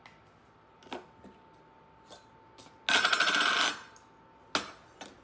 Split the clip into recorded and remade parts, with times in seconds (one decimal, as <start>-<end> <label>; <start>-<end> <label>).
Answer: 0.0-5.2 recorded